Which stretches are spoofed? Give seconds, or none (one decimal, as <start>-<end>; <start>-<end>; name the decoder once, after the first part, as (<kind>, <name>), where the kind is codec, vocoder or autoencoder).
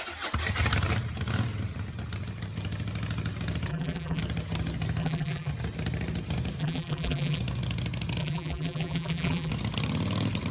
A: 3.7-4.2 (vocoder, BigVGAN v2); 5.0-5.5; 6.6-7.4; 8.2-9.5